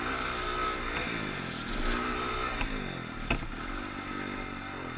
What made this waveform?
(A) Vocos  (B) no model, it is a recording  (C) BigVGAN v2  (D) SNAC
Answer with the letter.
B